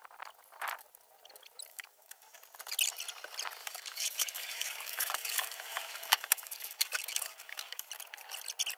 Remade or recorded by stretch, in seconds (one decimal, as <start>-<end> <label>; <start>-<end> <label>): 0.0-1.7 recorded; 1.7-2.4 remade; 2.4-3.6 recorded; 3.6-7.9 remade; 7.9-8.8 recorded